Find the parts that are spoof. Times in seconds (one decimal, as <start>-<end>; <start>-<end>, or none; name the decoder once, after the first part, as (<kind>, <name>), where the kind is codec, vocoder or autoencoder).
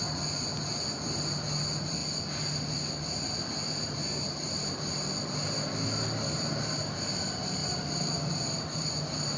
none